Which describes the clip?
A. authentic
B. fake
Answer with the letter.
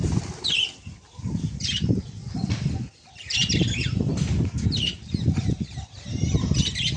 A